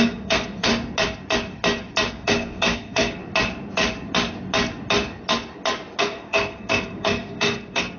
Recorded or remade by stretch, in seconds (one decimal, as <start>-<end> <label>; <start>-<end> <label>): 0.0-0.7 remade; 0.7-2.1 recorded; 2.1-3.2 remade; 3.2-6.0 recorded; 6.0-8.0 remade